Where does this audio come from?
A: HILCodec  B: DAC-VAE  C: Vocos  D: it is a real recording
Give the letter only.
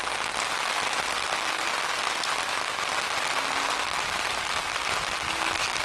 D